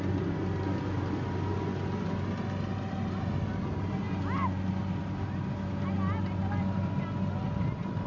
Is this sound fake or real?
real